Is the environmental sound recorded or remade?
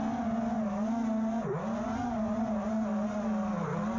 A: recorded